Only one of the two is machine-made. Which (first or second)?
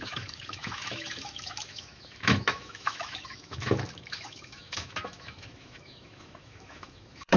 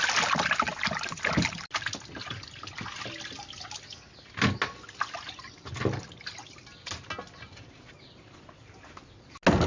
first